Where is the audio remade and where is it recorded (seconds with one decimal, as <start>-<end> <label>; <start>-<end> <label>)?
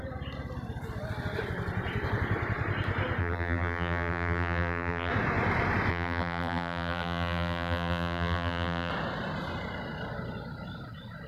0.0-3.2 recorded; 3.2-5.1 remade; 5.1-5.9 recorded; 5.9-8.9 remade; 8.9-11.3 recorded